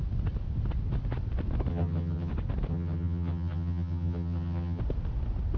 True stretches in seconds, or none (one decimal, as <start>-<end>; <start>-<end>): 0.0-1.7; 2.3-2.7; 4.8-5.6